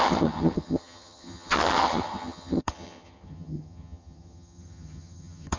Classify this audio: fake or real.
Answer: fake